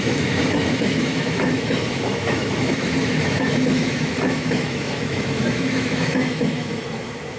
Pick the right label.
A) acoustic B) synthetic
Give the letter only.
B